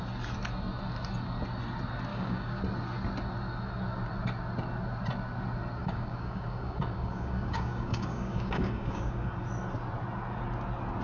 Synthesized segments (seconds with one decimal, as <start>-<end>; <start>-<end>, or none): 2.1-2.6; 5.8-9.3